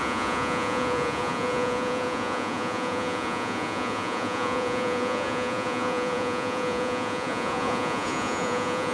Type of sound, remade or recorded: remade